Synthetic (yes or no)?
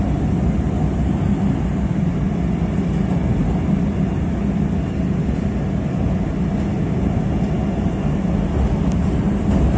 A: no